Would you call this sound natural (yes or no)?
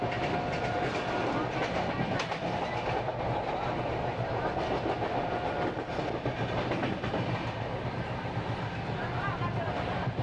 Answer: yes